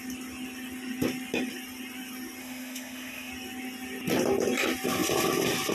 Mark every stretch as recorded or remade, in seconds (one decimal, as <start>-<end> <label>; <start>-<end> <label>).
0.0-2.4 recorded; 2.4-3.3 remade; 3.3-5.7 recorded